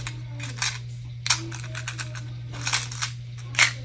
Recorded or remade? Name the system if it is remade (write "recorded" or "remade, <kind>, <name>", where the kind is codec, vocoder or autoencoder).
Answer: recorded